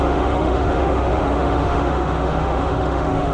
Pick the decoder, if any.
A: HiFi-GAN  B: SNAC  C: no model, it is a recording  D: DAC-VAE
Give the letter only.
D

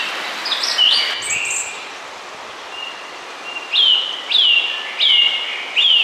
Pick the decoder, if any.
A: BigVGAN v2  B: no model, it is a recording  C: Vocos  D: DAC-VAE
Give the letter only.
B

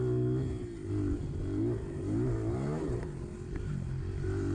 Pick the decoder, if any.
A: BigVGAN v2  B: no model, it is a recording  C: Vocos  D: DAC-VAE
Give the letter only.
B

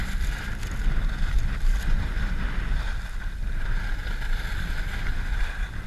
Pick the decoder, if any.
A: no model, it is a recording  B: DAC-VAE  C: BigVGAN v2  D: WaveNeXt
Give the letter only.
A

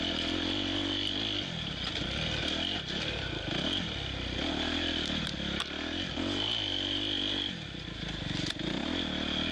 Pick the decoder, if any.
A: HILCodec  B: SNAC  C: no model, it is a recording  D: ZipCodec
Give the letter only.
C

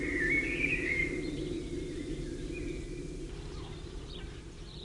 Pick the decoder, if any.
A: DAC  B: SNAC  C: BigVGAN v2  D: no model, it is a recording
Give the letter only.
C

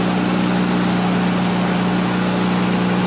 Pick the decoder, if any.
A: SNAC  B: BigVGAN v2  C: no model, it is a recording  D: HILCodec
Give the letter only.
C